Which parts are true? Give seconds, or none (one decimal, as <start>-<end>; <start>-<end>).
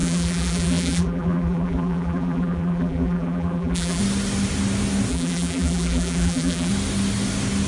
4.0-5.1; 6.7-7.7